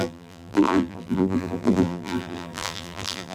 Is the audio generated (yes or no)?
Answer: yes